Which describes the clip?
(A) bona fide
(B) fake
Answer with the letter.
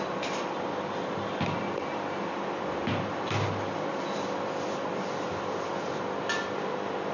A